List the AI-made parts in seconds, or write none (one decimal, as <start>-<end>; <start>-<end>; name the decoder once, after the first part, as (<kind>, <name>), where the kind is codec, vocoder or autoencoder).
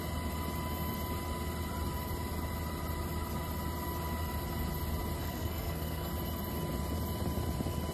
5.2-6.1 (codec, SNAC)